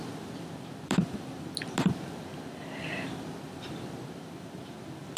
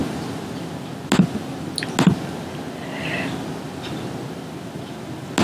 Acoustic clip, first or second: second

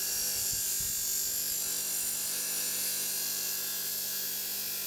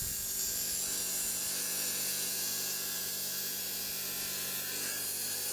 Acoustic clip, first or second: first